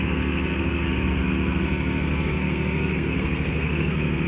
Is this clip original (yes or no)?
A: no